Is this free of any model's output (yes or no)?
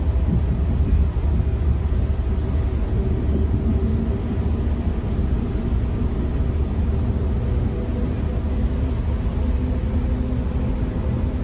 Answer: yes